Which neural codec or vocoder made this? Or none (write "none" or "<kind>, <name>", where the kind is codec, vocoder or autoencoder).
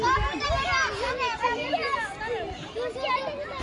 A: none